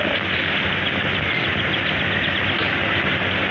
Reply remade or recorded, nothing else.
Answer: recorded